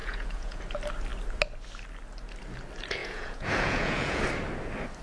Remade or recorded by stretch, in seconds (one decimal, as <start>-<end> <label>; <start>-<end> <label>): 0.0-0.6 remade; 0.6-3.0 recorded; 3.0-4.2 remade; 4.2-5.0 recorded